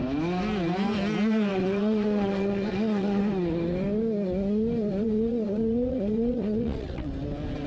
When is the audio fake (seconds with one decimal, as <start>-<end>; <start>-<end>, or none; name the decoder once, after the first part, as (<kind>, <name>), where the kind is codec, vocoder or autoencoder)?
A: 1.5-3.2 (vocoder, WaveNeXt); 5.0-7.1

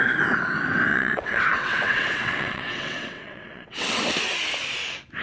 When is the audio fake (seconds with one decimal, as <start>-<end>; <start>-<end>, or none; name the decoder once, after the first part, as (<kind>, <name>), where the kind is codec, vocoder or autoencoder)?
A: 0.9-4.0 (vocoder, WaveNeXt)

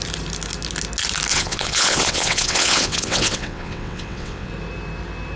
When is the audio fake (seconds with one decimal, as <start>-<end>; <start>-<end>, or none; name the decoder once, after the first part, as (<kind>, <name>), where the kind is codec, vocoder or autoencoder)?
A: 1.3-4.5 (vocoder, WaveNeXt)

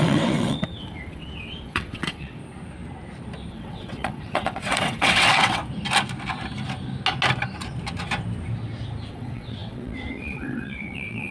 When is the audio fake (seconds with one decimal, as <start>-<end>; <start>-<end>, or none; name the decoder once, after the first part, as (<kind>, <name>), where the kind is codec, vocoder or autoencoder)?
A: 0.0-2.4 (vocoder, WaveNeXt); 3.5-5.6; 9.1-11.3